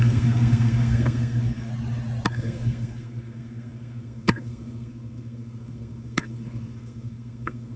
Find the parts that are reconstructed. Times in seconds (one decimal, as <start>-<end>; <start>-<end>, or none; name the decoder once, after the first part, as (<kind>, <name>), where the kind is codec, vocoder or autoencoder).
0.0-1.7 (codec, SNAC); 2.3-7.8